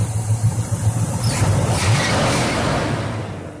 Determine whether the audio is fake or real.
real